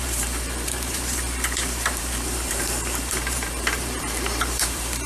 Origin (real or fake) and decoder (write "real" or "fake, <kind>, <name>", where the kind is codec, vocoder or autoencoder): fake, vocoder, BigVGAN v2